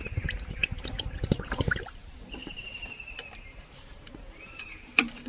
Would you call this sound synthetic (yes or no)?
yes